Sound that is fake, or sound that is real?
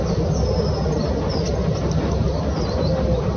real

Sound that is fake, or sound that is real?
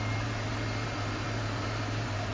fake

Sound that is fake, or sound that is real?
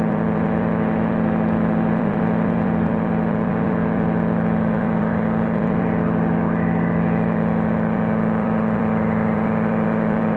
fake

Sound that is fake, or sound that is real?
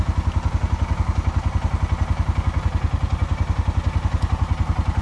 real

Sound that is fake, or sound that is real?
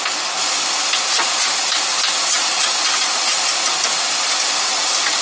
real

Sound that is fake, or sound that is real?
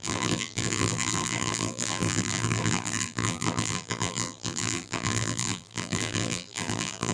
fake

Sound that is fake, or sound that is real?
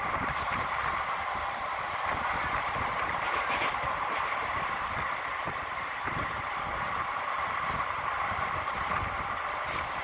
real